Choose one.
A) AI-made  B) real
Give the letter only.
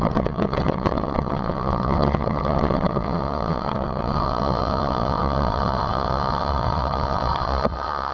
A